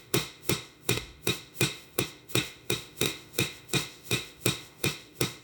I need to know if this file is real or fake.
fake